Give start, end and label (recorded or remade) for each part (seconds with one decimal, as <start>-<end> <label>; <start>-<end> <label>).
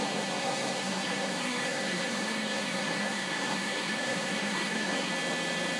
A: 0.0-5.1 remade; 5.1-5.8 recorded